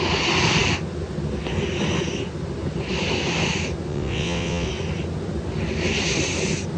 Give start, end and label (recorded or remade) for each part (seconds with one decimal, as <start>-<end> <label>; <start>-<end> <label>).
0.0-3.9 recorded; 3.9-4.7 remade; 4.7-6.8 recorded